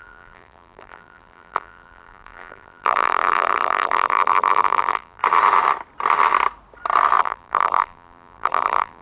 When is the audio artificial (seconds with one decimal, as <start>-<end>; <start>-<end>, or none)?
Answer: 0.0-5.2; 7.2-9.0